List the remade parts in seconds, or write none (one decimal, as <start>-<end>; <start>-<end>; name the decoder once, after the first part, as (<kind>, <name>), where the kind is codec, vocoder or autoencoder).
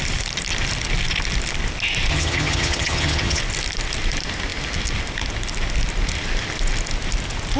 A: 2.1-3.4 (vocoder, HiFi-GAN)